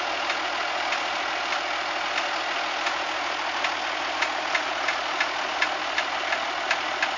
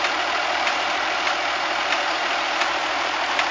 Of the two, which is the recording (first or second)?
first